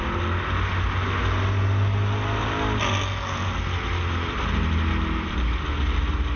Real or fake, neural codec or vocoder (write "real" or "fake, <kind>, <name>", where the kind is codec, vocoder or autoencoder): real